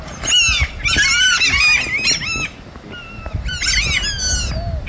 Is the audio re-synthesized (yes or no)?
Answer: no